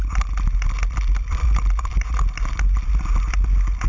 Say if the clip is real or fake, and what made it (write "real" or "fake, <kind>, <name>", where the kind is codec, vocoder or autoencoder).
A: real